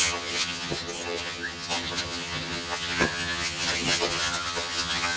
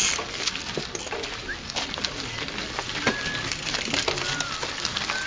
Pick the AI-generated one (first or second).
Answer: first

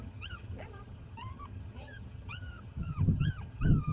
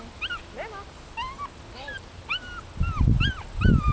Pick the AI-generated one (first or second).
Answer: first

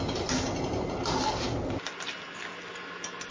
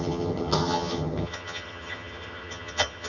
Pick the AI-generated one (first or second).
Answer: second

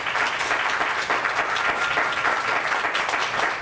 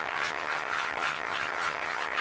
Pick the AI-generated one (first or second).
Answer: second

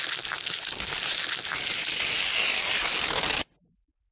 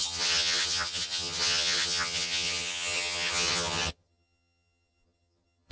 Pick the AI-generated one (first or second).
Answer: second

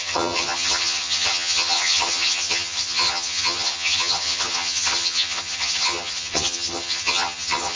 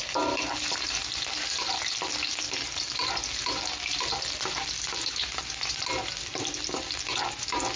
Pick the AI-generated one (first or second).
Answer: first